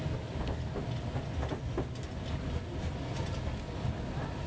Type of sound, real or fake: real